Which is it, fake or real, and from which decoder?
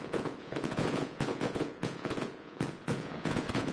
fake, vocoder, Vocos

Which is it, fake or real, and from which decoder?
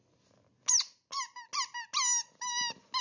real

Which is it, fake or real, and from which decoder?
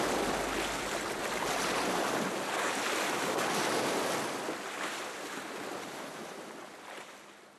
real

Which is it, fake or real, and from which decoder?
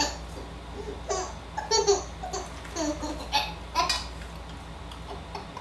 real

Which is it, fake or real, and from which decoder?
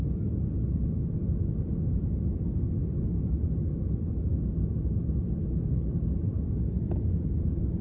real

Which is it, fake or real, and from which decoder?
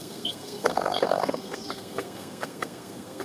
fake, codec, SNAC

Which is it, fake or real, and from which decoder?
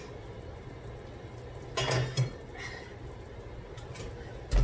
real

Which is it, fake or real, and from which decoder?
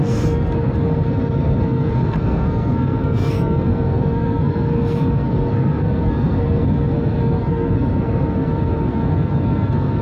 fake, codec, SNAC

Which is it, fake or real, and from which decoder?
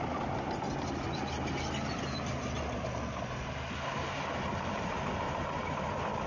real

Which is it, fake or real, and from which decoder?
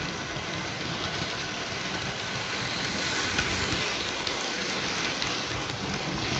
real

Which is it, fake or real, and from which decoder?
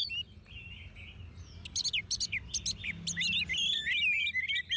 real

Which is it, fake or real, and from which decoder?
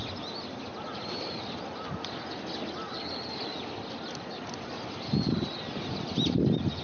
real